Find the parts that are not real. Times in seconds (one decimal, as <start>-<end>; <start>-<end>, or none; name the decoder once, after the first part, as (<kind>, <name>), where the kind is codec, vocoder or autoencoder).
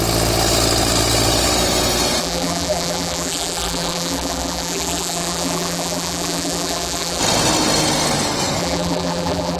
2.2-7.2 (vocoder, BigVGAN v2); 8.6-9.6